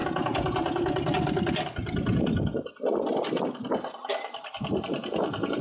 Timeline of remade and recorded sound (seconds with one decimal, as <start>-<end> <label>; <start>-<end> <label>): 0.0-4.0 recorded; 4.0-4.8 remade; 4.8-5.6 recorded

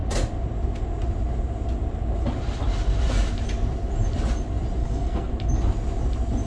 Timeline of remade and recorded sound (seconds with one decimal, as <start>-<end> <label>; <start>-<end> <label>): 0.0-4.8 recorded; 4.8-5.3 remade; 5.3-6.5 recorded

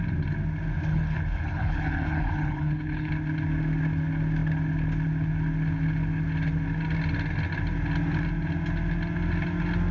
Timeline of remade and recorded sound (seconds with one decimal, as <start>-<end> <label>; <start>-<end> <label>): 0.0-0.9 recorded; 0.9-3.1 remade; 3.1-9.9 recorded

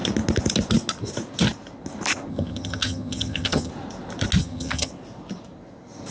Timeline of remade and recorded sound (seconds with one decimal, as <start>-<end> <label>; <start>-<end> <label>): 0.0-2.3 recorded; 2.3-3.7 remade; 3.7-4.4 recorded; 4.4-4.9 remade; 4.9-6.1 recorded

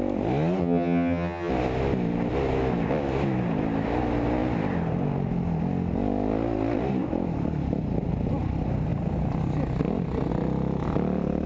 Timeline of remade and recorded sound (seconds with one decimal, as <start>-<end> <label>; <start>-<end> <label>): 0.0-0.6 recorded; 0.6-1.5 remade; 1.5-11.5 recorded